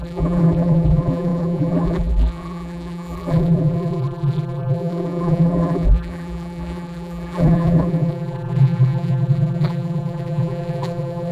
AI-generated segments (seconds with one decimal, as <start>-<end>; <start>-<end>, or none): 0.0-11.3